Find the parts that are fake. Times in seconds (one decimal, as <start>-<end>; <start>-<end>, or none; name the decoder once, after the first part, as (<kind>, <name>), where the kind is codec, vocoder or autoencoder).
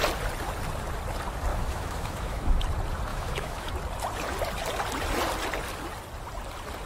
1.5-2.6 (autoencoder, DAC-VAE); 3.1-3.7